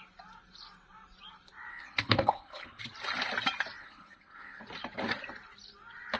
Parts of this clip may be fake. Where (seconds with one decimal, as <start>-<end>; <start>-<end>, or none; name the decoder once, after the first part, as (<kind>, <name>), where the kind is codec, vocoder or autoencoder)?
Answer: 1.7-2.8 (codec, HILCodec); 3.8-4.6